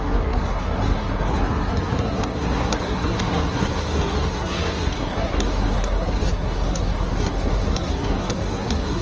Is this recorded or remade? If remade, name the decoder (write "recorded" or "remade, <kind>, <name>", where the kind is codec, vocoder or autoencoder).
remade, codec, SNAC